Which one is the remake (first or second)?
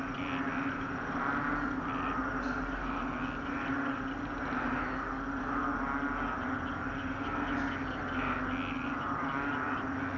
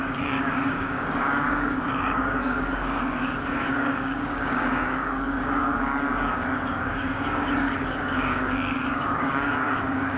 second